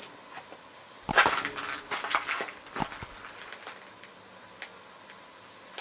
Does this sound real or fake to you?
real